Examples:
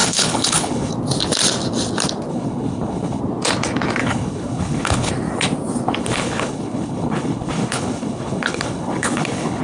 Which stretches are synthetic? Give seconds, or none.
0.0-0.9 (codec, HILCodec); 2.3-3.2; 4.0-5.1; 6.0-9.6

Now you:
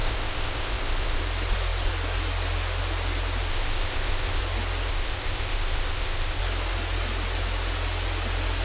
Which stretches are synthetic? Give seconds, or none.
0.0-1.2 (codec, ZipCodec); 3.5-4.4; 4.9-6.4

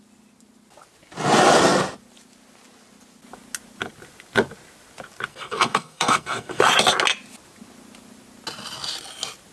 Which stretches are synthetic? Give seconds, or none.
5.3-6.6 (codec, SNAC)

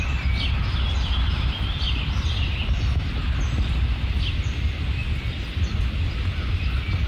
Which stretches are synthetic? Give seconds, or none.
none